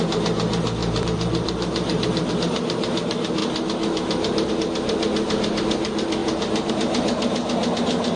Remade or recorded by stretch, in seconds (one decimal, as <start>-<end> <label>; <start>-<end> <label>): 0.0-0.8 recorded; 0.8-2.3 remade; 2.3-6.2 recorded; 6.2-6.7 remade; 6.7-8.2 recorded